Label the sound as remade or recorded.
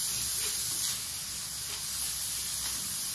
recorded